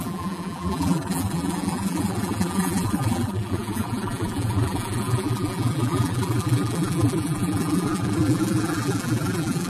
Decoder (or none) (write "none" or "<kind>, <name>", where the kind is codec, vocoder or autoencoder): vocoder, BigVGAN v2